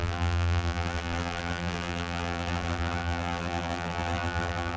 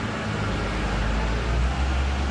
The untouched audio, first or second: second